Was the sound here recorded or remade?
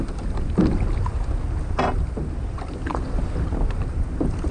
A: recorded